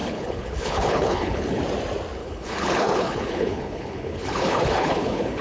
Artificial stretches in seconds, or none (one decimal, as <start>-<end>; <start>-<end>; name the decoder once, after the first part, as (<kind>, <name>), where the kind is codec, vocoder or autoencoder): 0.0-1.6 (codec, HILCodec); 2.2-5.4